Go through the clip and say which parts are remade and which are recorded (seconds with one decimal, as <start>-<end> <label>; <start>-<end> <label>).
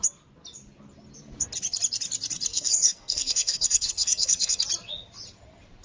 0.0-2.5 recorded; 2.5-4.6 remade; 4.6-5.8 recorded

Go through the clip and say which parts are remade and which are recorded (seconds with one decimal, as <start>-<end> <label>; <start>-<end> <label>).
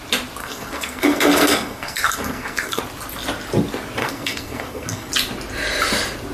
0.0-0.4 recorded; 0.4-2.8 remade; 2.8-4.0 recorded; 4.0-5.1 remade; 5.1-6.3 recorded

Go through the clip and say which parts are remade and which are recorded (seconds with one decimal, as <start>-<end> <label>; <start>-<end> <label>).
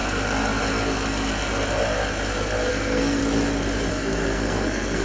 0.0-2.7 recorded; 2.7-3.2 remade; 3.2-3.9 recorded; 3.9-5.0 remade